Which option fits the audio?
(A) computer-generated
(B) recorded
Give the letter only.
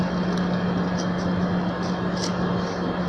B